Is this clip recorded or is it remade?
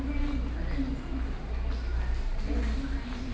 recorded